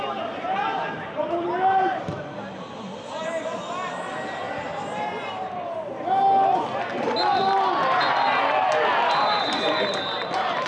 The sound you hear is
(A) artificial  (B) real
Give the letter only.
B